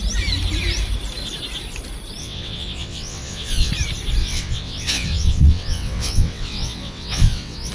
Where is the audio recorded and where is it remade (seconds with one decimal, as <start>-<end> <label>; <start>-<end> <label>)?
0.0-2.2 recorded; 2.2-3.7 remade; 3.7-4.2 recorded; 4.2-7.7 remade